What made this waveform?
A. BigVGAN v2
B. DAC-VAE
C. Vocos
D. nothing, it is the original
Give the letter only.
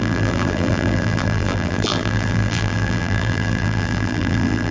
A